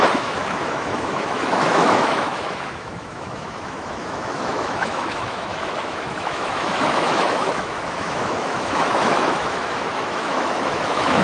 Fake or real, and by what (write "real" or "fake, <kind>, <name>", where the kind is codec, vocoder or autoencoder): fake, autoencoder, DAC-VAE